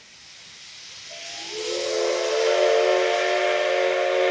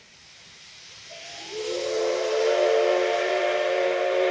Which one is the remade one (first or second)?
second